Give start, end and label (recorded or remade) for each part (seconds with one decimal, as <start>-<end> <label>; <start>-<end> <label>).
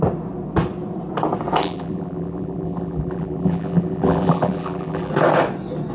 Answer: 0.0-1.6 recorded; 1.6-5.1 remade; 5.1-5.9 recorded